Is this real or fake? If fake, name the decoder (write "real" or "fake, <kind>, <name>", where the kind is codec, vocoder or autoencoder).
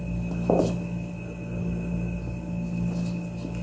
real